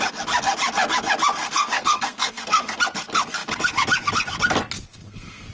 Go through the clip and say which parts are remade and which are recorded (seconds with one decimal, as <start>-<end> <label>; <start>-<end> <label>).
0.0-1.4 recorded; 1.4-2.8 remade; 2.8-4.9 recorded; 4.9-5.5 remade